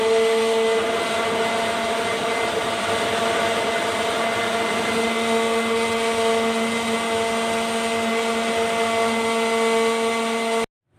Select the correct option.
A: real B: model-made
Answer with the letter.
A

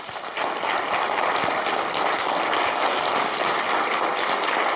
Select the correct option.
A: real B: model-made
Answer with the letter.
A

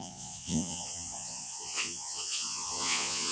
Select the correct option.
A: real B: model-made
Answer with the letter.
B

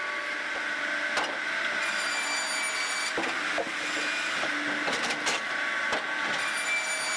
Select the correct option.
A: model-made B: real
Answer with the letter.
B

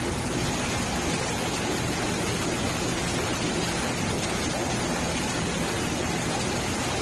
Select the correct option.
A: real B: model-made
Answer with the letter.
A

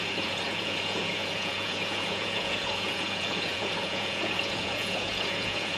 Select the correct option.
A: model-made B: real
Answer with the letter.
A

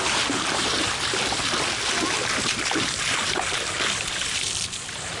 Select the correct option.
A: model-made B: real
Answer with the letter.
B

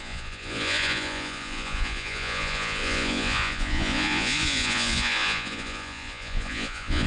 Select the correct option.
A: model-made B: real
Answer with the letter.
A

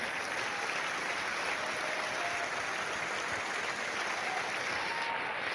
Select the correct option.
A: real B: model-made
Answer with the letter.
A